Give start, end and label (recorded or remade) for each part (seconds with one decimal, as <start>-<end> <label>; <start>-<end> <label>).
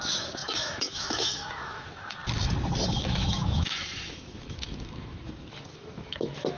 0.0-2.2 remade; 2.2-3.0 recorded; 3.0-6.6 remade